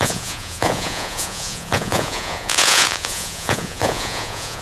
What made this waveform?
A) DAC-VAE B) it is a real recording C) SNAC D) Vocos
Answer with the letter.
D